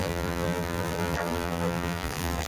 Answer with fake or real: fake